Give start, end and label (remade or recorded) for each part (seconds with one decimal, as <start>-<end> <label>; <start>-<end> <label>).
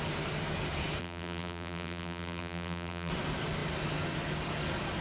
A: 0.0-1.0 recorded; 1.0-3.1 remade; 3.1-5.0 recorded